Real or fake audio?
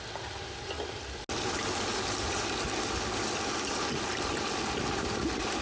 real